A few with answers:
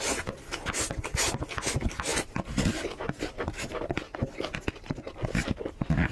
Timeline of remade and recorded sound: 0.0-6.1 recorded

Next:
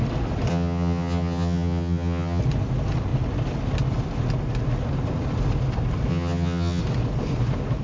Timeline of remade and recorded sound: 0.0-0.5 recorded; 0.5-2.4 remade; 2.4-6.1 recorded; 6.1-6.8 remade; 6.8-7.8 recorded